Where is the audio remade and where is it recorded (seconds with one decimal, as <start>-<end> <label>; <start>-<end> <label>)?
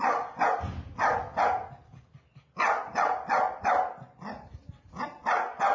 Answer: 0.0-5.7 recorded